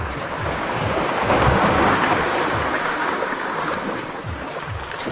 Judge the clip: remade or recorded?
remade